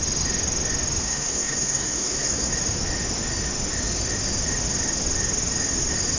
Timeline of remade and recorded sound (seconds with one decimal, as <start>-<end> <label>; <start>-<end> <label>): 0.0-1.0 recorded; 1.0-2.5 remade; 2.5-6.2 recorded